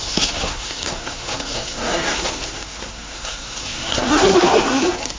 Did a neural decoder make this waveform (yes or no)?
yes